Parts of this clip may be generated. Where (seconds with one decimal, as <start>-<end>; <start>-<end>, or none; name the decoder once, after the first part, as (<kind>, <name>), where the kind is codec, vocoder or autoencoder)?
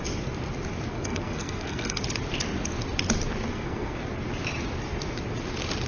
0.9-2.0 (codec, SNAC); 3.5-4.0